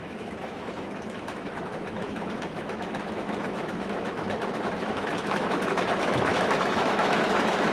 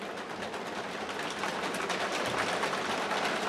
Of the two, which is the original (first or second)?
second